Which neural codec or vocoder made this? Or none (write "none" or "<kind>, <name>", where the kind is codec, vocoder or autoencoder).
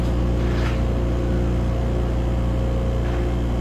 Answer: none